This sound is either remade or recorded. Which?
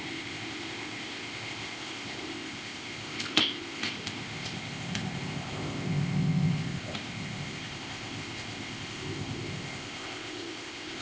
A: remade